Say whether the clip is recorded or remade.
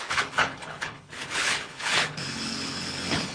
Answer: remade